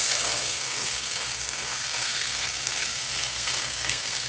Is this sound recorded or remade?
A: remade